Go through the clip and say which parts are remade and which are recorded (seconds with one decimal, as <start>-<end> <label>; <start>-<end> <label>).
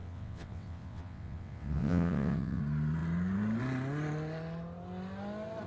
0.0-2.6 remade; 2.6-5.7 recorded